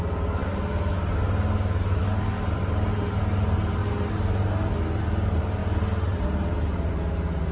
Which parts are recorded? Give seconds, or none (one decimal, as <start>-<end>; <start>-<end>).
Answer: 0.0-7.5